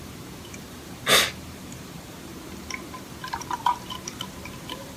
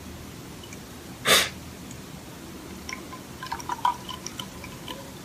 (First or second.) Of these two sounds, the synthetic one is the first